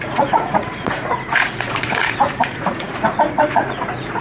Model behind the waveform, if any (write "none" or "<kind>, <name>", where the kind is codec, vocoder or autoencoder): vocoder, Vocos